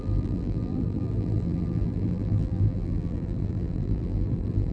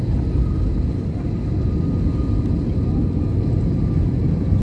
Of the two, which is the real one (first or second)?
second